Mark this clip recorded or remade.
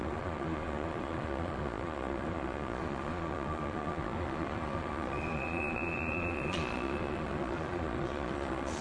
remade